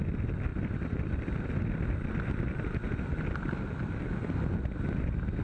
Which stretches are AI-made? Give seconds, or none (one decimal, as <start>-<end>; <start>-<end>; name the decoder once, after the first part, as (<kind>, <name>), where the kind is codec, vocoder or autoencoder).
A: none